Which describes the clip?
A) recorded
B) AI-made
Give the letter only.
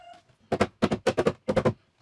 A